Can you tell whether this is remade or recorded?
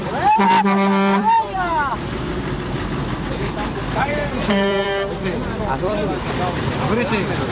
remade